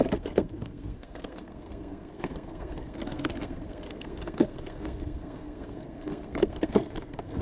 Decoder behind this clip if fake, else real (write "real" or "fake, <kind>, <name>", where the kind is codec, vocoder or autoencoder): fake, codec, SNAC